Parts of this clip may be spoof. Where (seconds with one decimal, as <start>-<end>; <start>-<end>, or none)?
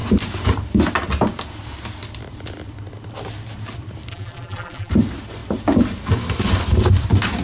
4.1-4.9